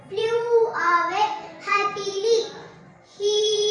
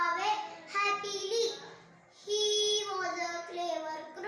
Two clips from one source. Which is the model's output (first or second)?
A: first